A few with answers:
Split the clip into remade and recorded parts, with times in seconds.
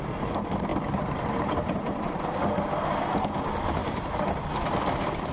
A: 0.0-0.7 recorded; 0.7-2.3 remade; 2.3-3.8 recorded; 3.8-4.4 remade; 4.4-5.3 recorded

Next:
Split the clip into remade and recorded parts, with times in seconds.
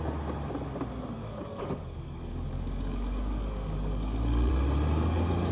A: 0.0-1.2 recorded; 1.2-4.5 remade; 4.5-5.5 recorded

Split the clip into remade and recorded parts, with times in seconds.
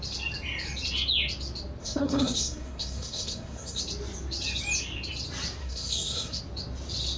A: 0.0-1.8 recorded; 1.8-3.8 remade; 3.8-5.6 recorded; 5.6-6.4 remade; 6.4-7.2 recorded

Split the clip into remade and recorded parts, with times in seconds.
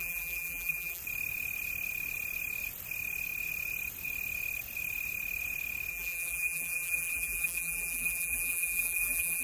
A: 0.0-1.0 remade; 1.0-5.9 recorded; 5.9-9.4 remade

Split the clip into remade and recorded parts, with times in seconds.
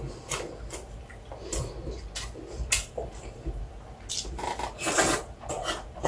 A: 0.0-6.1 recorded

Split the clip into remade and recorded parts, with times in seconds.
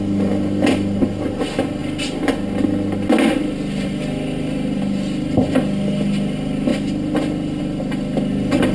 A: 0.0-8.7 recorded